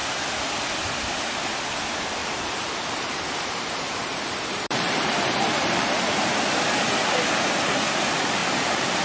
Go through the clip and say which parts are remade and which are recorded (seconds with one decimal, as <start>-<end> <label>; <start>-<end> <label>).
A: 0.0-2.2 recorded; 2.2-6.6 remade; 6.6-8.4 recorded; 8.4-9.0 remade